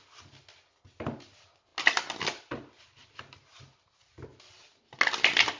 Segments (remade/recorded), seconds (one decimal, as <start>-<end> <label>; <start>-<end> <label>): 0.0-5.6 recorded